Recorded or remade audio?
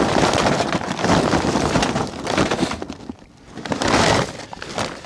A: recorded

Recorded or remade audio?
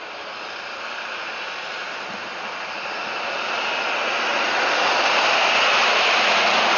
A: recorded